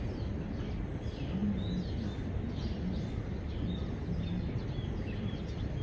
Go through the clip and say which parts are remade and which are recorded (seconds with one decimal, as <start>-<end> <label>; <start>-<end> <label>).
0.0-5.8 recorded